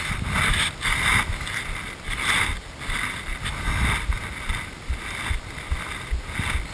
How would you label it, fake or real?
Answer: real